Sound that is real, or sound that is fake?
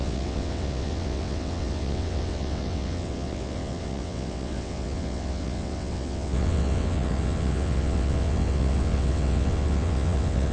fake